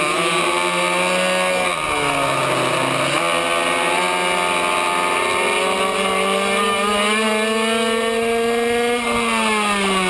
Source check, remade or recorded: recorded